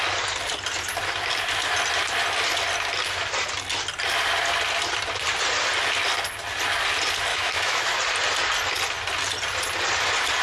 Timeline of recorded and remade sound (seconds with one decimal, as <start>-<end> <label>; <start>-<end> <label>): 0.0-7.3 recorded; 7.3-7.9 remade; 7.9-10.4 recorded